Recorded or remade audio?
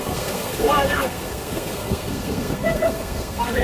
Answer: remade